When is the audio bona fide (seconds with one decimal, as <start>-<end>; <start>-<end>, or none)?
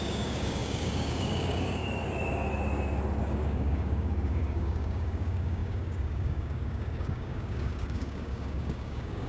1.8-3.2